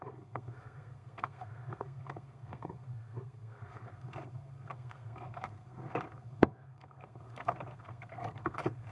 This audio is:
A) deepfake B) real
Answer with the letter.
A